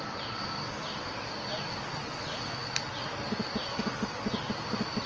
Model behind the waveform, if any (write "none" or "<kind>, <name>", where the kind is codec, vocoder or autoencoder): none